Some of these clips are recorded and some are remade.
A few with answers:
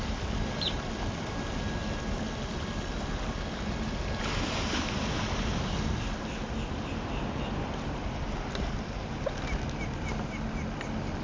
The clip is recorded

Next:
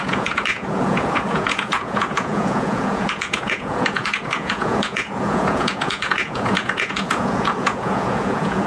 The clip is remade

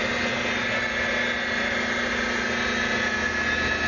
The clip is recorded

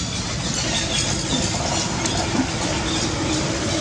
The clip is recorded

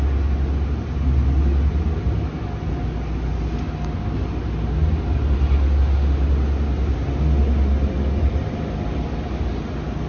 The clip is recorded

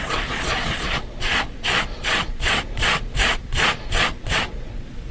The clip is remade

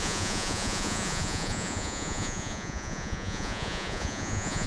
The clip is remade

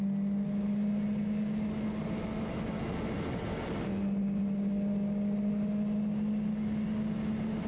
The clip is recorded